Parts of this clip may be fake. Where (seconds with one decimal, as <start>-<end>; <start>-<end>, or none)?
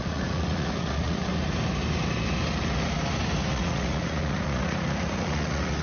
0.0-1.3; 3.5-5.8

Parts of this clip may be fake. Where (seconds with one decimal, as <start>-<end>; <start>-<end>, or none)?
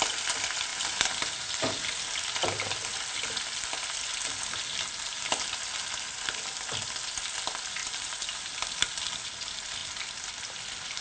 7.8-8.5